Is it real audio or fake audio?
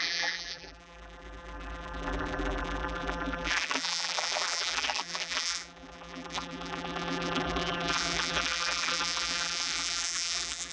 fake